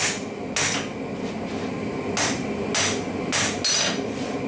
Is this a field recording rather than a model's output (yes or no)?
yes